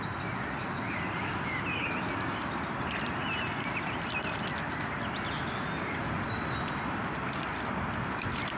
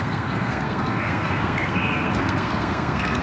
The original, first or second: first